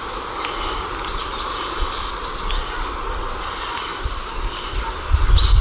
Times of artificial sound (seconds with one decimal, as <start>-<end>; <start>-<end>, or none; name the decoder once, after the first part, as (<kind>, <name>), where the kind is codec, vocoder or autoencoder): none